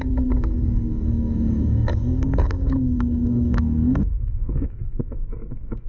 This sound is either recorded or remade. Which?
remade